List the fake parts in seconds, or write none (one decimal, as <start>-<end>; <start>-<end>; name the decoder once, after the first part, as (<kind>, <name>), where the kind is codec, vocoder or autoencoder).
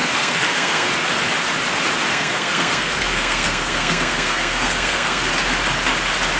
0.0-0.9 (codec, SNAC); 2.1-5.3